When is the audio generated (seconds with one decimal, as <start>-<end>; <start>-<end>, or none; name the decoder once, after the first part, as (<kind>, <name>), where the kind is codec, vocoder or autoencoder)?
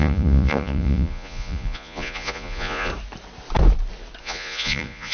0.0-2.9 (vocoder, Vocos); 4.2-5.1